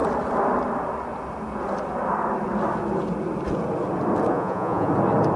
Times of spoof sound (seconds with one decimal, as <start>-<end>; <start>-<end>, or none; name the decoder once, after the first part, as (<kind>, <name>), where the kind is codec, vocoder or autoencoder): 4.3-4.9 (vocoder, Vocos)